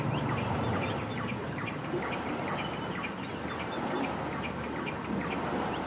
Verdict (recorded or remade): recorded